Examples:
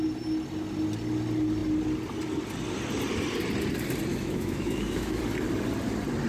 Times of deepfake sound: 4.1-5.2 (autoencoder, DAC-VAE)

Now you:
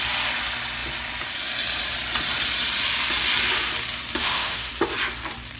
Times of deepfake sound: 4.2-4.7 (autoencoder, DAC-VAE)

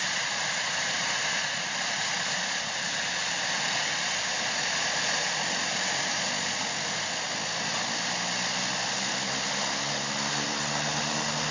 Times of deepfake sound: none

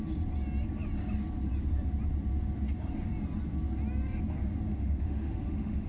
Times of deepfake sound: 4.7-5.9 (autoencoder, DAC-VAE)

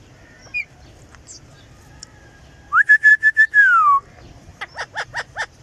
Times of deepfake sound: 3.1-3.6 (autoencoder, DAC-VAE)

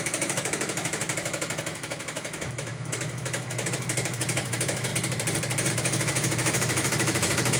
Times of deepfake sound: 0.0-4.9 (autoencoder, DAC-VAE); 5.7-7.6

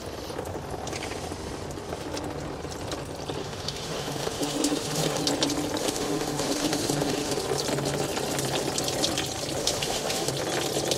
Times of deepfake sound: 3.4-5.2 (autoencoder, DAC-VAE); 5.8-7.4; 9.6-10.3

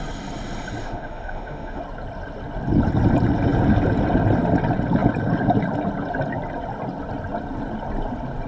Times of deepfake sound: 0.8-1.8 (autoencoder, DAC-VAE)